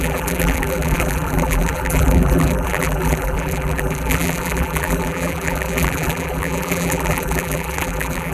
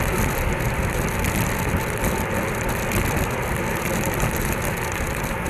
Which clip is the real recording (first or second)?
second